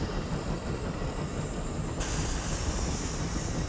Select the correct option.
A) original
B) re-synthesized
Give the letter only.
A